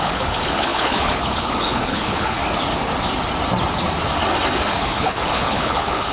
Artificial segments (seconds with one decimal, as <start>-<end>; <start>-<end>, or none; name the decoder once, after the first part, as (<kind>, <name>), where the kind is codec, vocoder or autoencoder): 0.0-2.4 (codec, HILCodec); 4.8-6.1